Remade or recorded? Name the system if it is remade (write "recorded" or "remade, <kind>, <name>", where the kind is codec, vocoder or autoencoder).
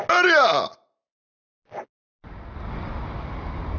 recorded